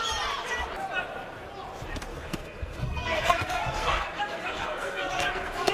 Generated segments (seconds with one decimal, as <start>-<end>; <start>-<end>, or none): 2.1-5.7